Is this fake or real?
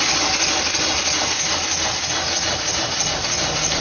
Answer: real